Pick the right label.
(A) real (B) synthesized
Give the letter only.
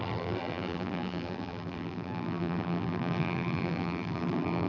B